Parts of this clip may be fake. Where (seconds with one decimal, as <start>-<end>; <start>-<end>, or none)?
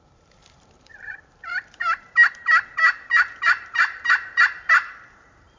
0.0-5.6